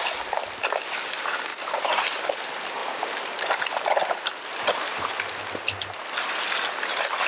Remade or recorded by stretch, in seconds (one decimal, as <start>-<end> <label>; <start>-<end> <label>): 0.0-1.5 recorded; 1.5-2.2 remade; 2.2-2.8 recorded; 2.8-5.1 remade; 5.1-7.3 recorded